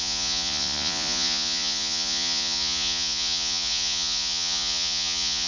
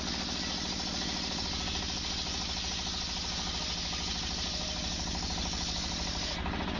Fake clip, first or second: first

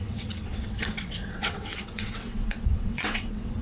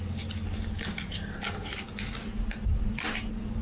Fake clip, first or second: first